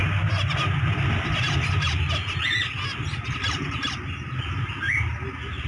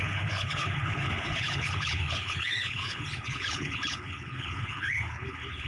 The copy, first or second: second